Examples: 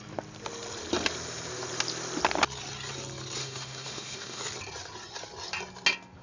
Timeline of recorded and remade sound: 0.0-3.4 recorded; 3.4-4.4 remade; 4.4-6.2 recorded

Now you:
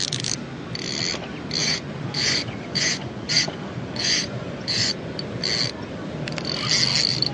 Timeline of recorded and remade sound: 0.0-1.6 recorded; 1.6-4.9 remade; 4.9-7.3 recorded

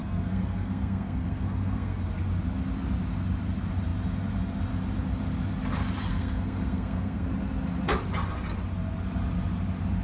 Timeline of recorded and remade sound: 0.0-2.0 remade; 2.0-6.1 recorded; 6.1-7.3 remade; 7.3-10.0 recorded

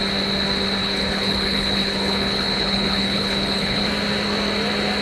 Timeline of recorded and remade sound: 0.0-0.8 recorded; 0.8-3.8 remade; 3.8-5.0 recorded